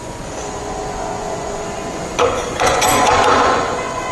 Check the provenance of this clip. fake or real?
fake